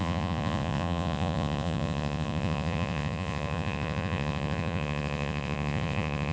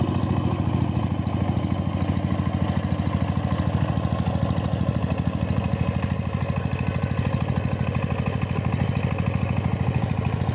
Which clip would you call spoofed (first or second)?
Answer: first